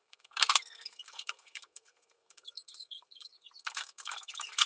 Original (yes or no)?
no